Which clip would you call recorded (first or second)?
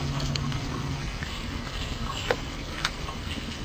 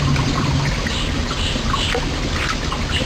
second